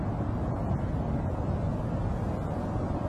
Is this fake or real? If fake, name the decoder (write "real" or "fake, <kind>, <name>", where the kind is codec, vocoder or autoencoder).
real